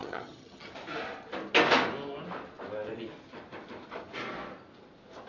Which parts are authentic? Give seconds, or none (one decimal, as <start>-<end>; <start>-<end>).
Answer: 0.7-5.3